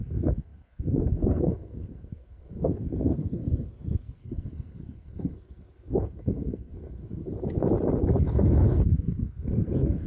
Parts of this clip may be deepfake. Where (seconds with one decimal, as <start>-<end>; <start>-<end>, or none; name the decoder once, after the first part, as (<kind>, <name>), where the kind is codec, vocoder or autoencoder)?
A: 0.0-7.2 (codec, SNAC); 8.2-10.1